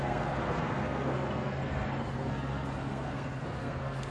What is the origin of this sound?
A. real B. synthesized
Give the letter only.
B